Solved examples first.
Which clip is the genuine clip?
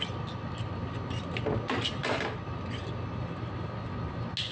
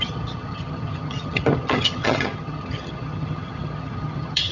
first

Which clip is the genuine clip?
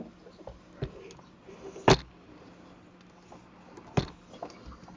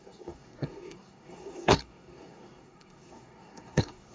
first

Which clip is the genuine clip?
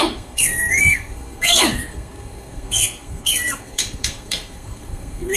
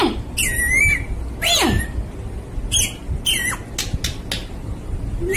second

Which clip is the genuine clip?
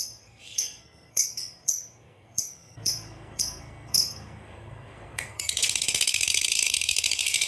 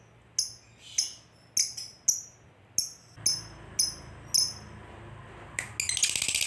second